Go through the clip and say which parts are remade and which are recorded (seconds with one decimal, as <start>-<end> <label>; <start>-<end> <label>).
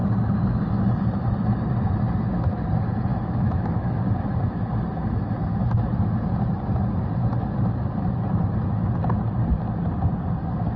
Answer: 0.0-3.1 recorded; 3.1-4.0 remade; 4.0-10.8 recorded